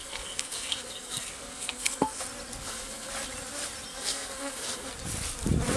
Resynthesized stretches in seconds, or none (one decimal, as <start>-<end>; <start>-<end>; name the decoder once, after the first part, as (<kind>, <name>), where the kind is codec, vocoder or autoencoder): 0.0-2.2 (codec, SNAC); 2.6-3.1; 3.9-4.9